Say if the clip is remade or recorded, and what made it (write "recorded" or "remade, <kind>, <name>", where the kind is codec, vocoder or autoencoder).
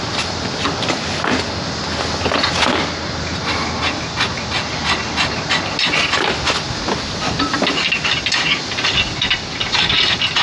recorded